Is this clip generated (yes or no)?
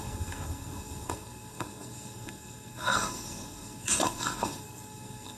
yes